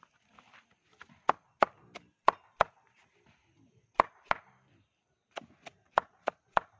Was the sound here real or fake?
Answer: real